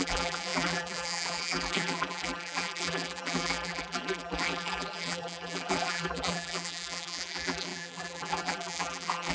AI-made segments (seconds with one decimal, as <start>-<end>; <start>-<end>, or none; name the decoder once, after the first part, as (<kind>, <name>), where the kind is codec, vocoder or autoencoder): 0.0-9.3 (vocoder, BigVGAN v2)